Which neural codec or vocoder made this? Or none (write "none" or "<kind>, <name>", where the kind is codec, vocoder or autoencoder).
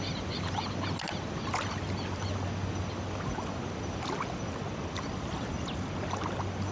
none